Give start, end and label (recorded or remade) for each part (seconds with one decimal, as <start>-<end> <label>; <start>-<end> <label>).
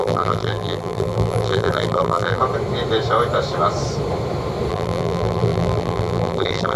0.0-2.4 remade; 2.4-4.7 recorded; 4.7-6.8 remade